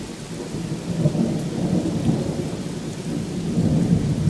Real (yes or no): yes